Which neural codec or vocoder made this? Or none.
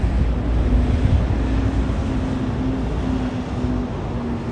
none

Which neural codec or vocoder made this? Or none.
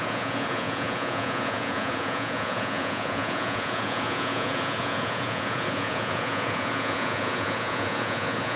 vocoder, Vocos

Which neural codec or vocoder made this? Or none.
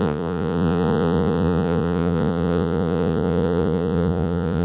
vocoder, Vocos